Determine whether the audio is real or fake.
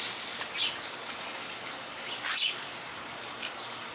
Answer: real